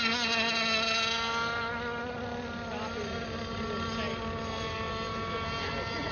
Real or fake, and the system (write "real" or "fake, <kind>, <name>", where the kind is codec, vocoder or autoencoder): real